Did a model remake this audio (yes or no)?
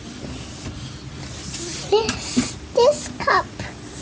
no